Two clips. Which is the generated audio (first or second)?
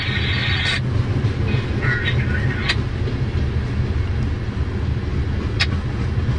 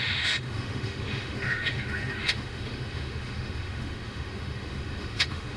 second